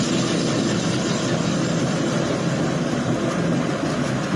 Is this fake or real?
real